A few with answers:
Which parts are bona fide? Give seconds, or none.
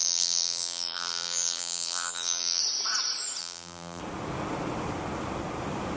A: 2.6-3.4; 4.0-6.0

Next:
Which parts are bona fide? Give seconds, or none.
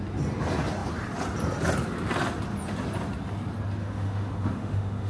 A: 0.0-3.8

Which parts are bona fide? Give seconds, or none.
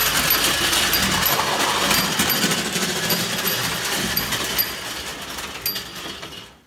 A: 0.0-2.1; 5.1-6.2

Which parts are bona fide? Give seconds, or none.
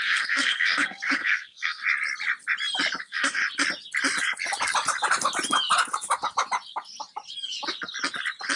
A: 1.8-3.0; 3.4-8.6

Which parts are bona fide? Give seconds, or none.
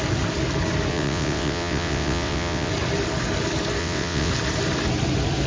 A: 0.0-0.9; 2.7-3.8; 4.3-5.5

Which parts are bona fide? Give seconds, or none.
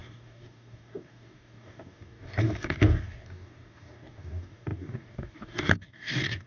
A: none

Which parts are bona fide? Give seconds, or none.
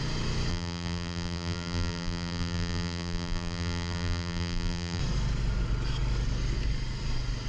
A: 0.0-0.5; 5.0-7.5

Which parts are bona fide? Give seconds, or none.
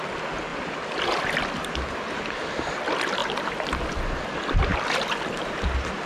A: 0.0-3.2; 3.9-4.7